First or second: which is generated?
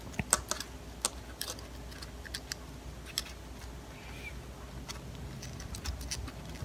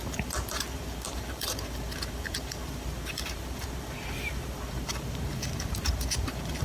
second